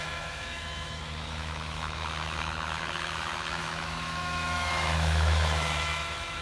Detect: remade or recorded remade